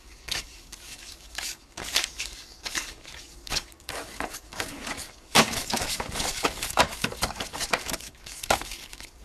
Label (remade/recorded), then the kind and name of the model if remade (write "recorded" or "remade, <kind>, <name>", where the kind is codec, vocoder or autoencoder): remade, codec, DAC